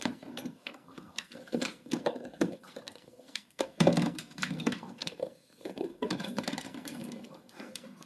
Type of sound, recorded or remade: remade